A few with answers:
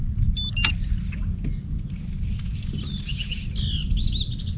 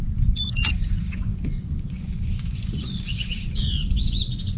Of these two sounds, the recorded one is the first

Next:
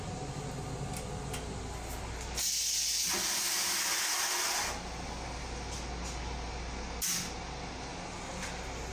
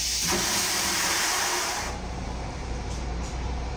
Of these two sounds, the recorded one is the first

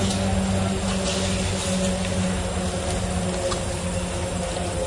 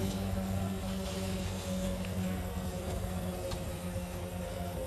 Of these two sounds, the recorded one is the first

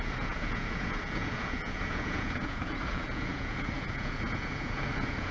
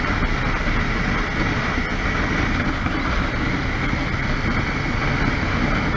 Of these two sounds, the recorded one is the second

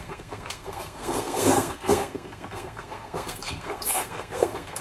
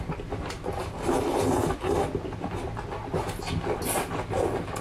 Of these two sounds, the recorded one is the second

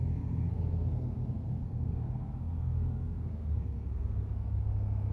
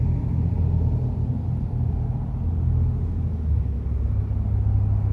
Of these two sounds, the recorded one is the second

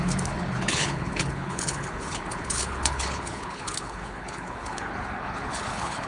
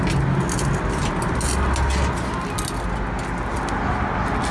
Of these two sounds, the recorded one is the second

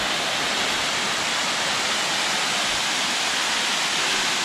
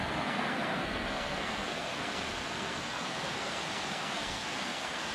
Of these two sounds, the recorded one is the first